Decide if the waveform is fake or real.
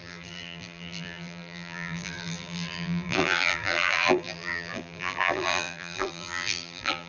fake